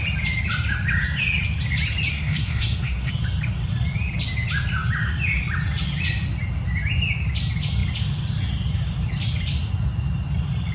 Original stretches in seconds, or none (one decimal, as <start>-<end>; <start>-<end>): 0.0-2.1; 3.1-10.7